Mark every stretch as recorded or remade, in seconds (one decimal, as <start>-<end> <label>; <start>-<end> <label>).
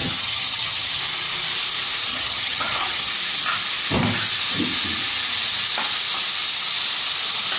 0.0-1.0 remade; 1.0-2.1 recorded; 2.1-3.1 remade; 3.1-7.6 recorded